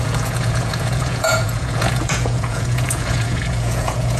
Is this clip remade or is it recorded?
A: remade